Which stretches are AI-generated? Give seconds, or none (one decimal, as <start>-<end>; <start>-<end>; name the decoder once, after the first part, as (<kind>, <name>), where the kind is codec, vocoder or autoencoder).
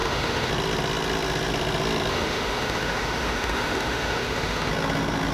0.0-0.5 (autoencoder, DAC-VAE); 2.1-4.7